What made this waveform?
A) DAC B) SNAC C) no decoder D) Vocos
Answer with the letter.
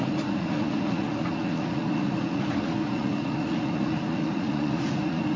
D